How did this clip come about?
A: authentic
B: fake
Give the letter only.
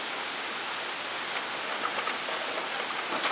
A